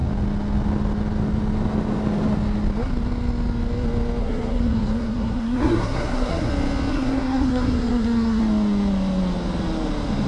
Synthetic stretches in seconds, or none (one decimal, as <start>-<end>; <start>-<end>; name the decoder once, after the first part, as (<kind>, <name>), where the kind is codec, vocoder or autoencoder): 4.2-6.5 (codec, SNAC); 6.9-8.4